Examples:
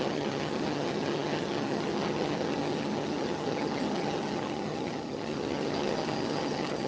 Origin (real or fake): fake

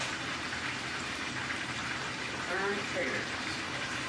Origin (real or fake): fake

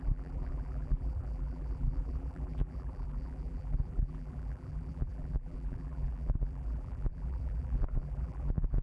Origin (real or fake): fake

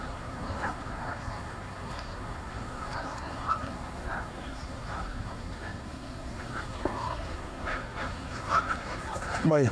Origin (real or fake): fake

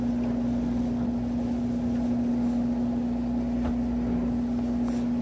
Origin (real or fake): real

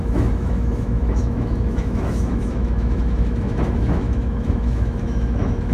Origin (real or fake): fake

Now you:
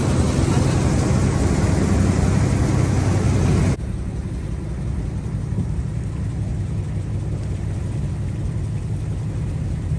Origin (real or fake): real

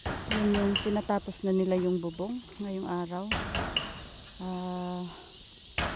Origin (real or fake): real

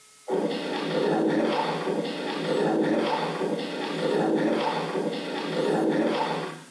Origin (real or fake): real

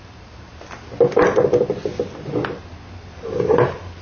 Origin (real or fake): real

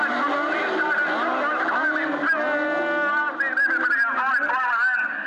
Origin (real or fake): real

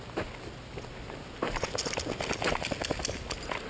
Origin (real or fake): real